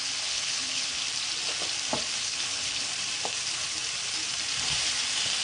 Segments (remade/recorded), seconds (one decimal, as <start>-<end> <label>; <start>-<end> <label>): 0.0-1.0 remade; 1.0-2.2 recorded; 2.2-2.9 remade; 2.9-5.4 recorded